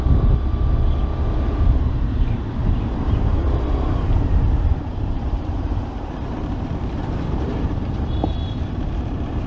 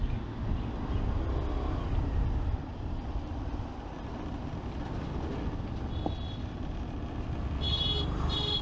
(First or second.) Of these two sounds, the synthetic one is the first